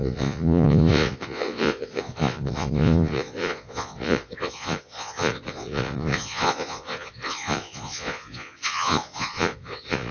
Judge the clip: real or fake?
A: fake